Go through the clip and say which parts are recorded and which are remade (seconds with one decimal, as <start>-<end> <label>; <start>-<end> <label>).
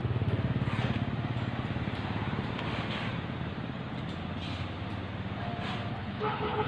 0.0-5.9 recorded; 5.9-6.7 remade